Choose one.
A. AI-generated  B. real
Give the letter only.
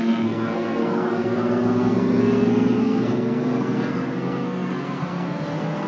A